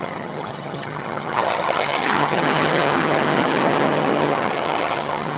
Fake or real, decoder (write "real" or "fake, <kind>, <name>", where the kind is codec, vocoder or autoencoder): fake, vocoder, HiFi-GAN